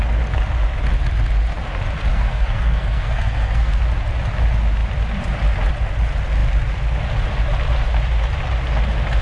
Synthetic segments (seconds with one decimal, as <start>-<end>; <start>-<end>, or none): 2.1-3.8